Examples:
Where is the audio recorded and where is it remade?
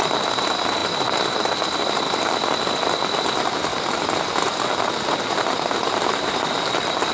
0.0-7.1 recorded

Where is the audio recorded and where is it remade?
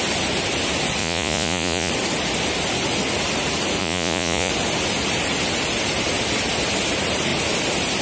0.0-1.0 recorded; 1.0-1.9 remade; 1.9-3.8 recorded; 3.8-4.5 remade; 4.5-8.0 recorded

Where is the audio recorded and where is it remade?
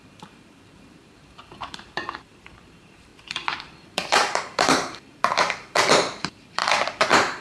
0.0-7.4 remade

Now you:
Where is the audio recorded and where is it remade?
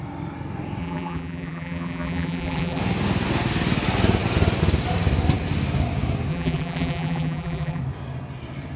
0.0-0.8 recorded; 0.8-2.8 remade; 2.8-6.3 recorded; 6.3-7.8 remade; 7.8-8.8 recorded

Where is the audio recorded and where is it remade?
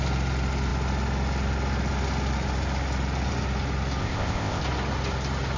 0.0-4.0 recorded; 4.0-4.6 remade; 4.6-5.6 recorded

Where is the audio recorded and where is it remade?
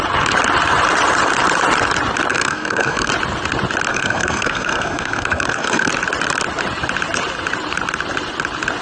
0.0-2.3 recorded; 2.3-3.1 remade; 3.1-3.9 recorded; 3.9-5.9 remade; 5.9-8.8 recorded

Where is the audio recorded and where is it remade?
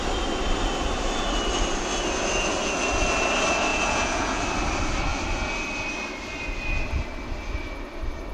0.0-3.7 recorded; 3.7-4.4 remade; 4.4-8.3 recorded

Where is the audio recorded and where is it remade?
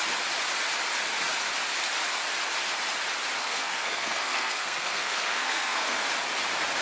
0.0-3.4 recorded; 3.4-6.1 remade; 6.1-6.8 recorded